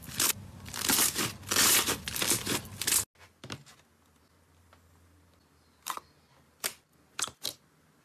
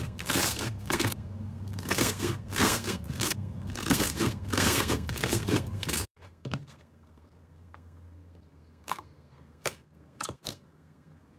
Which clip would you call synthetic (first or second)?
second